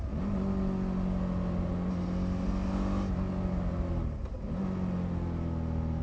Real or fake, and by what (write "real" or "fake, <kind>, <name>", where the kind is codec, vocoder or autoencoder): real